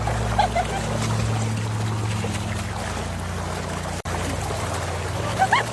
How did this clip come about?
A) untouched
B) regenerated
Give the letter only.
A